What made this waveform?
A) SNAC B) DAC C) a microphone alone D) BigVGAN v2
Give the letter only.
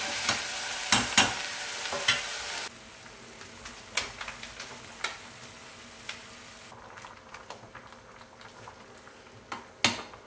C